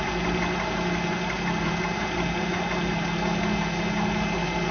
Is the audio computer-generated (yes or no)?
no